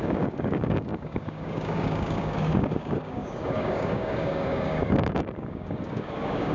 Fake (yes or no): yes